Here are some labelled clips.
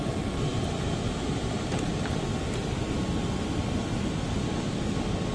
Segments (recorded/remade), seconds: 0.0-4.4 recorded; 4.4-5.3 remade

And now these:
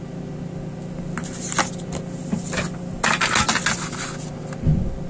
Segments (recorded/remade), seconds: 0.0-5.1 recorded

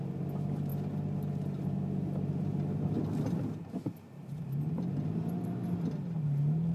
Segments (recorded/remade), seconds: 0.0-6.7 recorded

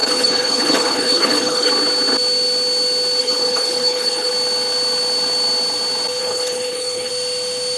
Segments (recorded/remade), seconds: 0.0-1.7 remade; 1.7-3.2 recorded; 3.2-4.3 remade; 4.3-6.2 recorded; 6.2-7.1 remade; 7.1-7.8 recorded

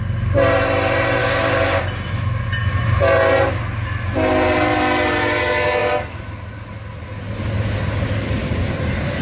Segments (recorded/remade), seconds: 0.0-1.2 recorded; 1.2-1.8 remade; 1.8-9.2 recorded

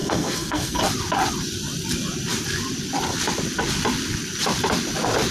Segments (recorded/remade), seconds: 0.0-0.8 remade; 0.8-5.3 recorded